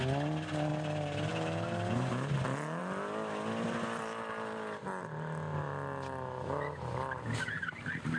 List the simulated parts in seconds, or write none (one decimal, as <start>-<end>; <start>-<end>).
none

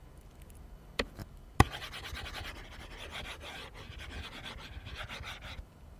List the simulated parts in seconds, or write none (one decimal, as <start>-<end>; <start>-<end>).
none